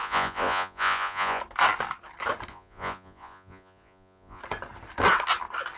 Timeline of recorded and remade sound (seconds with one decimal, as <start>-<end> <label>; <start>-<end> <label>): 0.0-1.4 remade; 1.4-2.5 recorded; 2.5-4.4 remade; 4.4-5.8 recorded